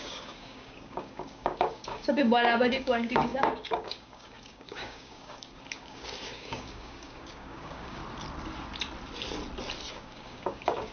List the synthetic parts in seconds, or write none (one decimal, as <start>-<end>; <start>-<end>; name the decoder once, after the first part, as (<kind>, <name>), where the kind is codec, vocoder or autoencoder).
0.0-8.0 (codec, DAC); 9.9-10.9